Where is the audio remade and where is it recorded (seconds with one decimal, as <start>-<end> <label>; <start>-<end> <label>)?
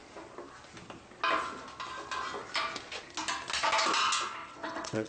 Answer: 0.0-4.4 recorded; 4.4-5.1 remade